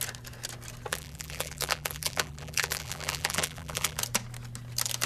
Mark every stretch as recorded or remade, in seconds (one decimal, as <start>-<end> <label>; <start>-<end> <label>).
0.0-0.9 recorded; 0.9-4.0 remade; 4.0-5.1 recorded